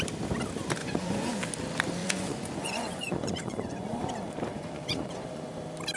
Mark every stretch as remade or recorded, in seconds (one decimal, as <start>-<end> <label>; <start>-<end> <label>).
0.0-0.8 recorded; 0.8-1.3 remade; 1.3-2.0 recorded; 2.0-4.0 remade; 4.0-4.5 recorded; 4.5-5.5 remade; 5.5-6.0 recorded